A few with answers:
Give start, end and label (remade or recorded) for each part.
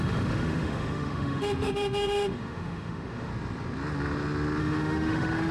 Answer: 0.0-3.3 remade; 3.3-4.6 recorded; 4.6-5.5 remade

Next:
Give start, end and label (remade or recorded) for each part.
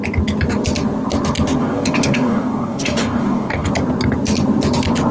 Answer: 0.0-1.6 recorded; 1.6-3.7 remade; 3.7-5.1 recorded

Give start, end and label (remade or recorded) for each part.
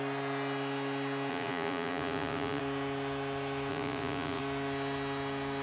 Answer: 0.0-1.3 recorded; 1.3-2.6 remade; 2.6-3.7 recorded; 3.7-4.4 remade; 4.4-5.6 recorded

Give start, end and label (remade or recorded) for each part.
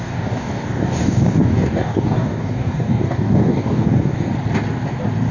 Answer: 0.0-4.3 remade; 4.3-5.3 recorded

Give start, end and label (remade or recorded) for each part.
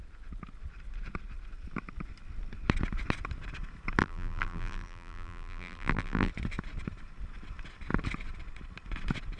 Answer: 0.0-4.0 recorded; 4.0-6.3 remade; 6.3-9.4 recorded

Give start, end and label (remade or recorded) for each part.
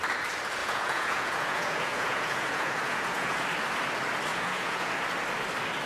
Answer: 0.0-0.6 recorded; 0.6-3.4 remade; 3.4-4.3 recorded; 4.3-4.9 remade; 4.9-5.9 recorded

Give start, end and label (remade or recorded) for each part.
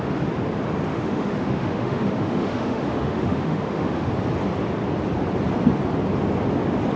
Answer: 0.0-0.9 recorded; 0.9-4.1 remade; 4.1-7.0 recorded